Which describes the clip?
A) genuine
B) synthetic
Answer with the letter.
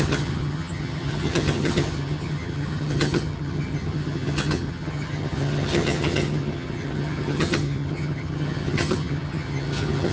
B